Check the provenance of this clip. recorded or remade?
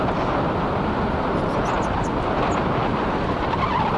recorded